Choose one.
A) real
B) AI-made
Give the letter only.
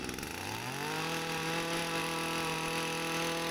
A